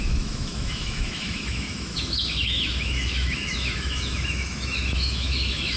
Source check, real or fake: fake